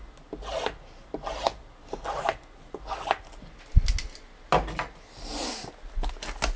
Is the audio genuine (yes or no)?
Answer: yes